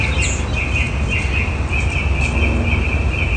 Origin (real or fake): real